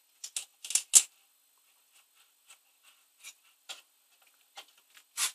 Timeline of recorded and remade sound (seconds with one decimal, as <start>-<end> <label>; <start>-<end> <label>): 0.0-5.3 recorded